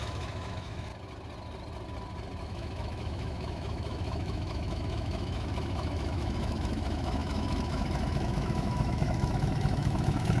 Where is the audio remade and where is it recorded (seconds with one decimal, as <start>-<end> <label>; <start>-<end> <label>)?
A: 0.0-0.9 remade; 0.9-2.4 recorded; 2.4-10.4 remade